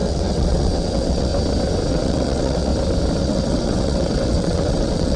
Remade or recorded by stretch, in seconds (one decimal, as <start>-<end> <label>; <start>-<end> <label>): 0.0-1.3 remade; 1.3-1.9 recorded; 1.9-2.7 remade; 2.7-3.2 recorded; 3.2-5.2 remade